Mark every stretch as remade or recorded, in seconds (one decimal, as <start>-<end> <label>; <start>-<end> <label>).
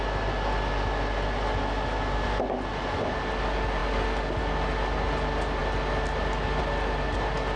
0.0-7.6 recorded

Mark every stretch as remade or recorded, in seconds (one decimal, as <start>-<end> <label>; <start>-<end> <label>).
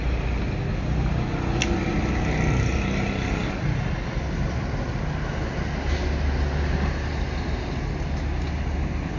0.0-9.2 recorded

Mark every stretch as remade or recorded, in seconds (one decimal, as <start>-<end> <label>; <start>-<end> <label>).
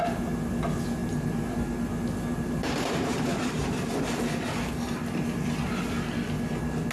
0.0-1.0 recorded; 1.0-1.5 remade; 1.5-2.3 recorded; 2.3-3.8 remade; 3.8-6.9 recorded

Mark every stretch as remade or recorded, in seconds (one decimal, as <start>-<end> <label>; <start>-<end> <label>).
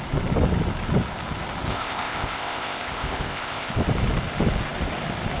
0.0-1.7 recorded; 1.7-3.7 remade; 3.7-5.4 recorded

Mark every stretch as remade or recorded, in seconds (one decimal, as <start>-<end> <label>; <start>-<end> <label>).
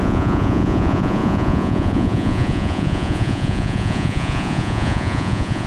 0.0-5.7 remade